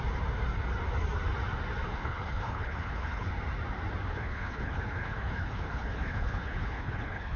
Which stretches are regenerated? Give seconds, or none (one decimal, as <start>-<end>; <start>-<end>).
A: 1.9-3.3; 4.1-7.4